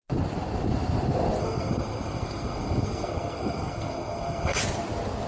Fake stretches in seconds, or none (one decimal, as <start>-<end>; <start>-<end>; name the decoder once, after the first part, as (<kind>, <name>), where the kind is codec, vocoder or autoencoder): 1.4-4.6 (codec, SNAC)